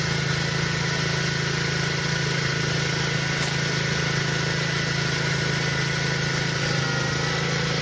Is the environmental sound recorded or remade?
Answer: recorded